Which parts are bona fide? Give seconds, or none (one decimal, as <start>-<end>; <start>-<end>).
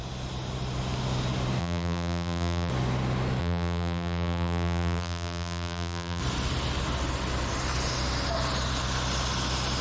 0.0-1.6; 2.7-3.4; 6.2-9.8